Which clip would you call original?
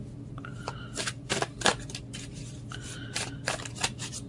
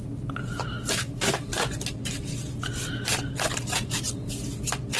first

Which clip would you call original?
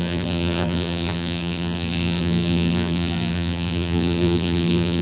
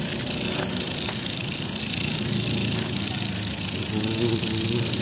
second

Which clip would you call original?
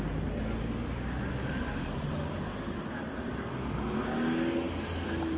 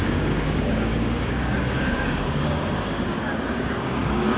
first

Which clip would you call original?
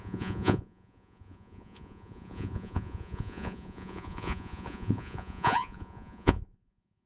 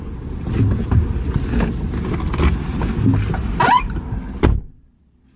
second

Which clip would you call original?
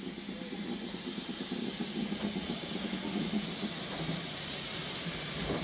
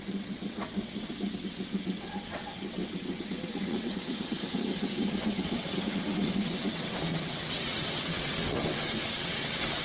first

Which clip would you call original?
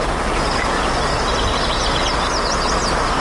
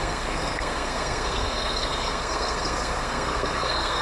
first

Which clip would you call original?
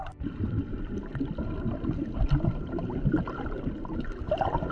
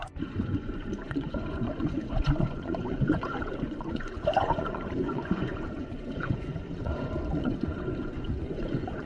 first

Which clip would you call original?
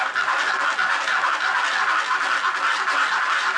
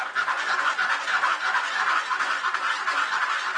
first